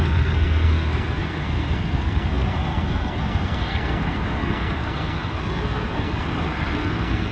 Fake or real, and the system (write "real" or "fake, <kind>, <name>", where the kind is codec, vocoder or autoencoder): fake, codec, SNAC